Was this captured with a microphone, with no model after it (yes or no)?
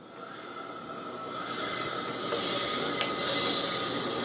yes